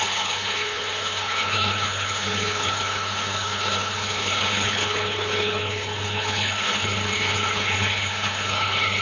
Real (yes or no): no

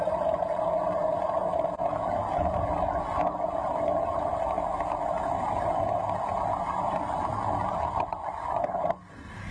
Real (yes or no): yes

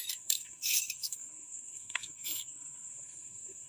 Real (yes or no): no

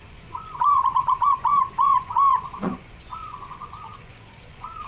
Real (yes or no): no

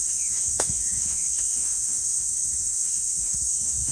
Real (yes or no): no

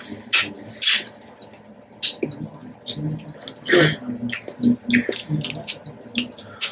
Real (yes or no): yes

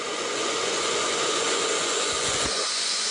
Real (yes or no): no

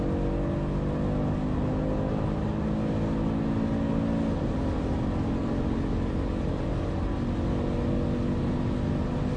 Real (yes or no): yes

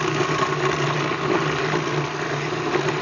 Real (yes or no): yes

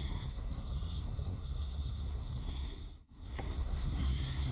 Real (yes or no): no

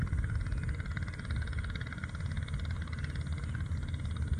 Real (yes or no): yes